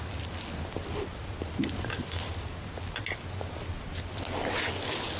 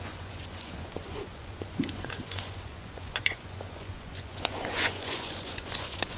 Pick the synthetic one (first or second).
second